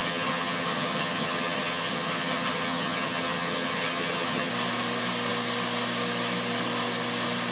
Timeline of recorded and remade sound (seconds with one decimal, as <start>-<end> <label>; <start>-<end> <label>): 0.0-4.5 remade; 4.5-7.5 recorded